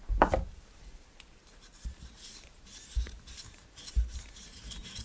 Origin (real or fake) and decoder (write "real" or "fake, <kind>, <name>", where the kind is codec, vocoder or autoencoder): fake, vocoder, BigVGAN v2